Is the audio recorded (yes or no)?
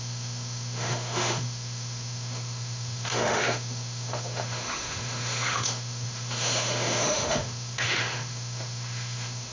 no